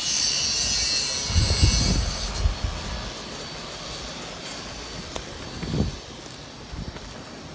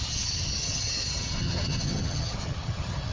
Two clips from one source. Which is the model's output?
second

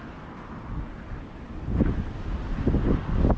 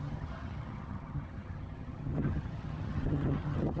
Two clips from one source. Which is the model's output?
second